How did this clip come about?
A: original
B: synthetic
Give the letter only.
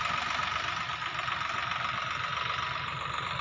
A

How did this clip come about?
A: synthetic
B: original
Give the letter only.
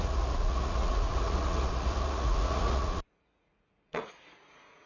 A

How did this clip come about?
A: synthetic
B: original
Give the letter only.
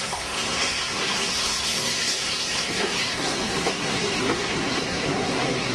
A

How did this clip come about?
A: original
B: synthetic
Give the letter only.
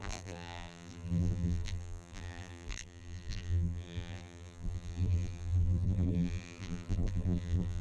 B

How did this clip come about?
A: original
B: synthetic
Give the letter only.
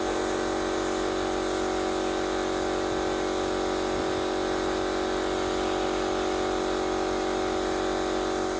A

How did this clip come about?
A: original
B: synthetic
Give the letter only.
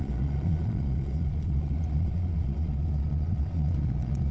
B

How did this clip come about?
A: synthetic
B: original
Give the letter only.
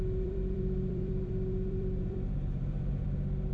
A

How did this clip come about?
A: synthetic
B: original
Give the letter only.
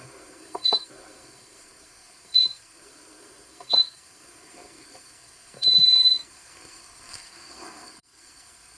A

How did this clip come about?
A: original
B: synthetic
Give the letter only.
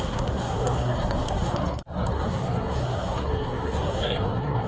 B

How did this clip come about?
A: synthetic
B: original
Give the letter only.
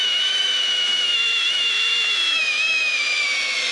A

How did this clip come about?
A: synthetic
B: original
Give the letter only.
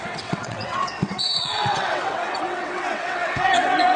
A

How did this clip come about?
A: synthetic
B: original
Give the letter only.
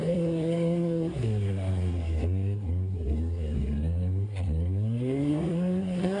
A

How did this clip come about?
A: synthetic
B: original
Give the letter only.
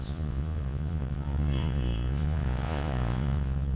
A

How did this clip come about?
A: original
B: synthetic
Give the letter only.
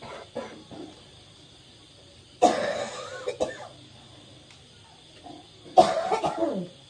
A